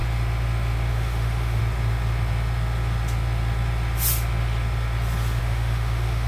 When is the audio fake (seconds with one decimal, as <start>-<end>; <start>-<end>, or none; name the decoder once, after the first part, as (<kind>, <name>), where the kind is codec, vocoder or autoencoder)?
0.9-1.6 (autoencoder, DAC-VAE); 5.4-6.3